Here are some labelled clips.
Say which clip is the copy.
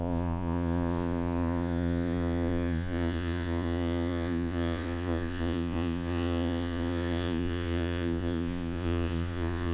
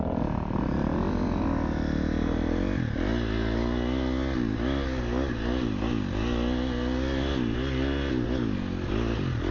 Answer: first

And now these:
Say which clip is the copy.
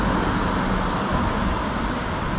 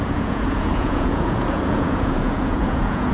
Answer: second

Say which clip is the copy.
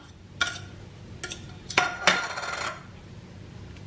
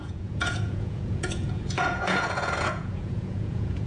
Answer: second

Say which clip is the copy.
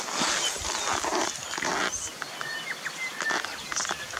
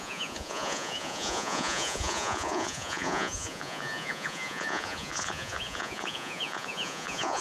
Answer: second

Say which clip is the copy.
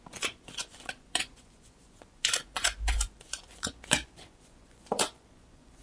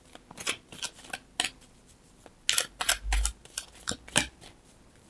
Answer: first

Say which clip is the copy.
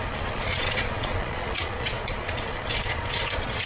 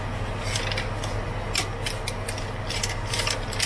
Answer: first